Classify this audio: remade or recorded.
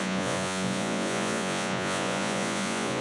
remade